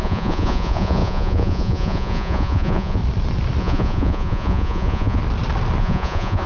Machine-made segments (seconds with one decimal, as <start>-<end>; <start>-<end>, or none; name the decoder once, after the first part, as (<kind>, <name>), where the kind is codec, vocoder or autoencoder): 0.0-3.0 (vocoder, Vocos); 3.6-5.2; 5.8-6.5